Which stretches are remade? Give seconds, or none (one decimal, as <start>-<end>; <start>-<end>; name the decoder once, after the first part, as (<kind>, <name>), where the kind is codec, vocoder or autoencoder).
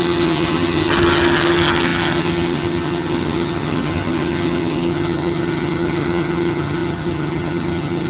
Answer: 0.0-8.1 (vocoder, HiFi-GAN)